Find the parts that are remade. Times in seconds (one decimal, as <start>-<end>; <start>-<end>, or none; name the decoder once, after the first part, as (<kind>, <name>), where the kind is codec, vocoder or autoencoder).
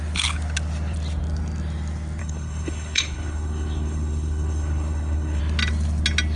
2.2-5.4 (codec, HILCodec)